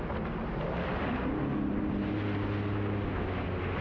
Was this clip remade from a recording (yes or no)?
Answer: no